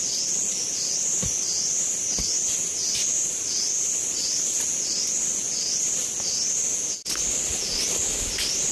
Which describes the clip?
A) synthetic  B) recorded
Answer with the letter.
B